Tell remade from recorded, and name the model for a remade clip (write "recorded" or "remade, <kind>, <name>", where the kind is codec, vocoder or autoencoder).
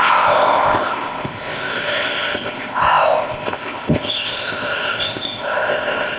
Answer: remade, codec, ZipCodec